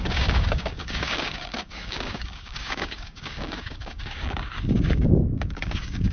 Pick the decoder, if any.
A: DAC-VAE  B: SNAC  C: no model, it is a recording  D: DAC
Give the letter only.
D